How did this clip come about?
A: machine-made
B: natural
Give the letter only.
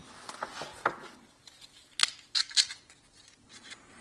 B